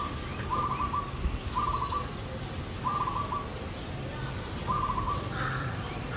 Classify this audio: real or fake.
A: real